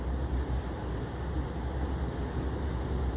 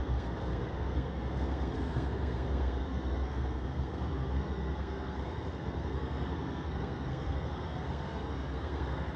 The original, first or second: first